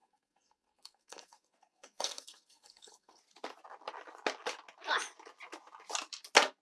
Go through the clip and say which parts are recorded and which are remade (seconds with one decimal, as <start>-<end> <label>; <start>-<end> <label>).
0.0-3.2 remade; 3.2-6.6 recorded